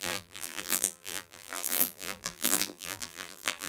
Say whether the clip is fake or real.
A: fake